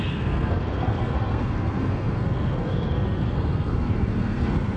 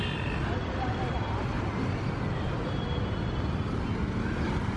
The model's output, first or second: first